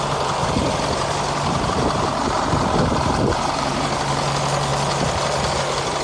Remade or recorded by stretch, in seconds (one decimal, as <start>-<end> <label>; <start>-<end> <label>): 0.0-0.4 recorded; 0.4-3.9 remade; 3.9-6.0 recorded